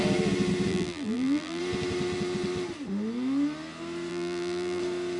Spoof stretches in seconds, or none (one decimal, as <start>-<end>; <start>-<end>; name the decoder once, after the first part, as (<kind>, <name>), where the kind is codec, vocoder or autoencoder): 0.7-1.6 (vocoder, BigVGAN v2); 4.1-4.8